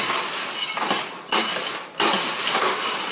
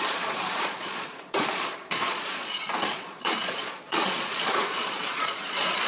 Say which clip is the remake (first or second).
second